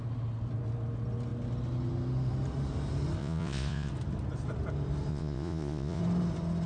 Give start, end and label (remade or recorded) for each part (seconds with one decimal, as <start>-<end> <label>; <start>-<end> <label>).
0.0-3.2 recorded; 3.2-3.9 remade; 3.9-5.1 recorded; 5.1-6.0 remade; 6.0-6.7 recorded